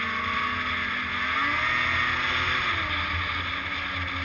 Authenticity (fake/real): real